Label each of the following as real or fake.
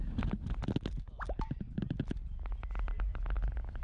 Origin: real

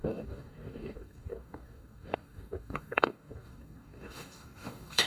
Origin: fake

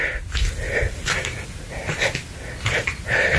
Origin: real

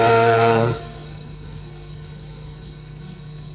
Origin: fake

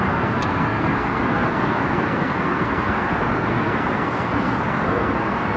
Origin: fake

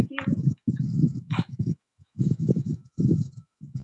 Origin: fake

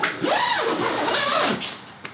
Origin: real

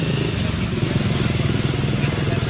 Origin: real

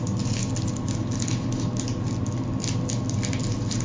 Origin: real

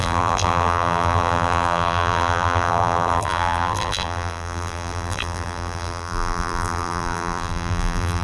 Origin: fake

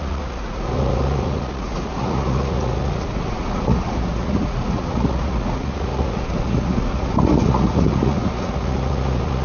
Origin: fake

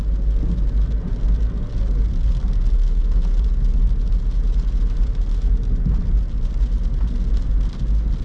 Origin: real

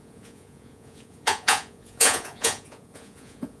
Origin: fake